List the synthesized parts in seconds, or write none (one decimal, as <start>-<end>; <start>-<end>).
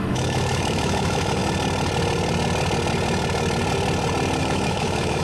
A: 0.0-1.4; 4.4-5.2